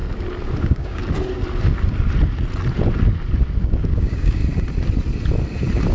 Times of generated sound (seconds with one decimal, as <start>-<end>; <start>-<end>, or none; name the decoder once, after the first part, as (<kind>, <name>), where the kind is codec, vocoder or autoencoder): 0.6-1.0 (codec, DAC); 3.6-4.4